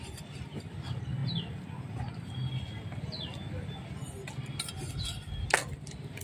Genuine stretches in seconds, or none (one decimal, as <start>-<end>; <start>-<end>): 0.0-6.2